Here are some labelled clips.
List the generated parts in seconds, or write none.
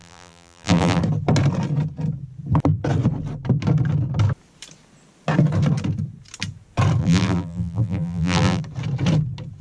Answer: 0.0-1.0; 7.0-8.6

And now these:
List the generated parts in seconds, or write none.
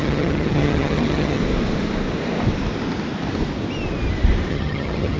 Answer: 0.0-1.4; 4.5-5.2